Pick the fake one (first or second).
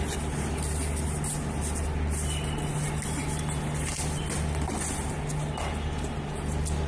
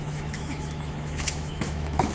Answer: second